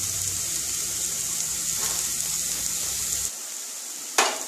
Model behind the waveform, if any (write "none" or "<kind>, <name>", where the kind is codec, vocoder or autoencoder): none